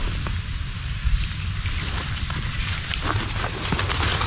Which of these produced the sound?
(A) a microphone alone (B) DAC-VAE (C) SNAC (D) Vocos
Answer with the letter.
A